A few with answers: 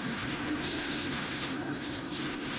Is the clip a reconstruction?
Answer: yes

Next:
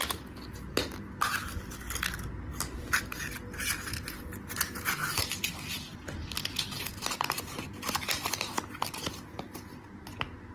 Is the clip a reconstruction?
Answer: no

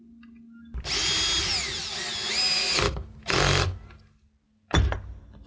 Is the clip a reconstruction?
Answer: no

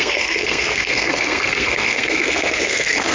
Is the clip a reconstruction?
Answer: yes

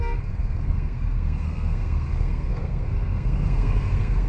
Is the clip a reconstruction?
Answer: yes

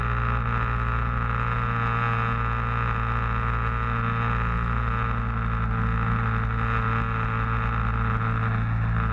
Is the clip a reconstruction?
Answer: no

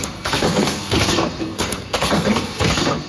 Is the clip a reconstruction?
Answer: yes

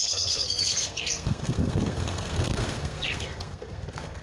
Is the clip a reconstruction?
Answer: yes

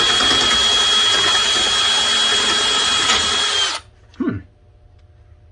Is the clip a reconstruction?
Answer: no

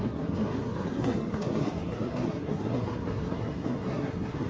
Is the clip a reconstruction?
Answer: yes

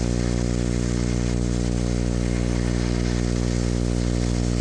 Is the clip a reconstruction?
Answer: no